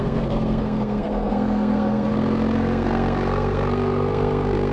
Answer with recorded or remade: remade